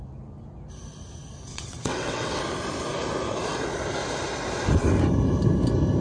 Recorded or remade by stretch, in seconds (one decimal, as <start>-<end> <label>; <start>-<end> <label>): 0.0-1.5 recorded; 1.5-2.4 remade; 2.4-6.0 recorded